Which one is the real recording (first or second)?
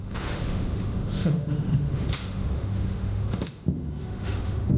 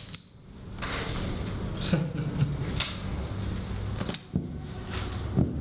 second